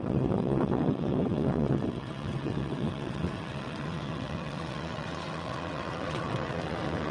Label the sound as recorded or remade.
remade